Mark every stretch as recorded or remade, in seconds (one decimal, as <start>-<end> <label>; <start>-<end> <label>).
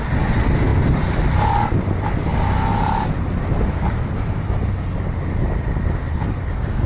0.0-6.9 recorded